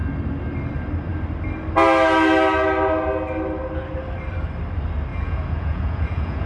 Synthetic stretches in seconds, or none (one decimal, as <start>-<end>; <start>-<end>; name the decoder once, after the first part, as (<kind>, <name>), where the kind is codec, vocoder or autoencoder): 5.1-6.5 (vocoder, Vocos)